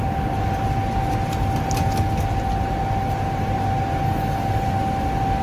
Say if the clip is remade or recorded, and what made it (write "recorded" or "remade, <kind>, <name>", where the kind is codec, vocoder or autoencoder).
recorded